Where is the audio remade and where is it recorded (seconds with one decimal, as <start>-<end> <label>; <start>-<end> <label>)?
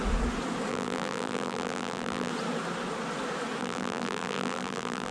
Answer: 0.0-0.7 recorded; 0.7-2.3 remade; 2.3-3.6 recorded; 3.6-5.1 remade